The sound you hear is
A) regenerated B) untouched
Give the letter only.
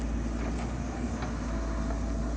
B